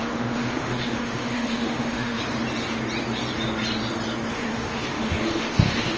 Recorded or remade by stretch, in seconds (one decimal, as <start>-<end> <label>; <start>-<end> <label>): 0.0-2.2 remade; 2.2-4.3 recorded; 4.3-6.0 remade